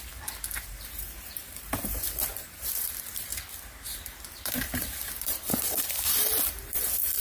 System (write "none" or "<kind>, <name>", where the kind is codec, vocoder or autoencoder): vocoder, BigVGAN v2